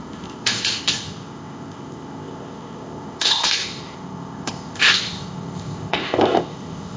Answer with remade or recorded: remade